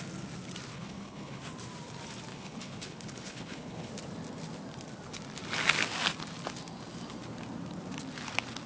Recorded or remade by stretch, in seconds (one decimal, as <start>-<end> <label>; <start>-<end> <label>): 0.0-0.7 recorded; 0.7-1.4 remade; 1.4-2.3 recorded; 2.3-3.9 remade; 3.9-8.7 recorded